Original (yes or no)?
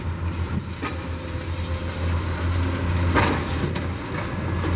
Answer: yes